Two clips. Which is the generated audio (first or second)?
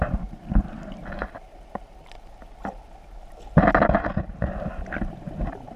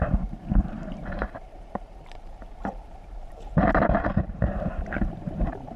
second